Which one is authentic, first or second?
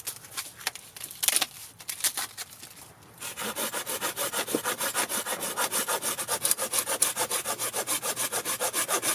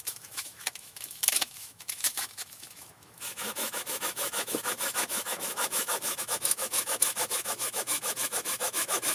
first